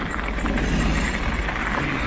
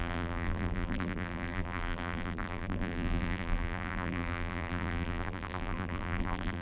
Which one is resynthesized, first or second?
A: second